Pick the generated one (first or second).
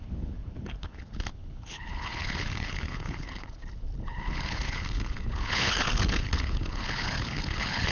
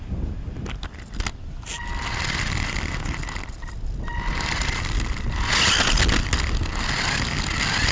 first